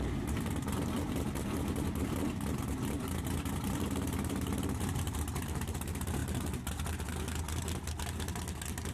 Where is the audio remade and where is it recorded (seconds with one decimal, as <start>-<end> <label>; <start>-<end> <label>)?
0.0-6.2 remade; 6.2-8.9 recorded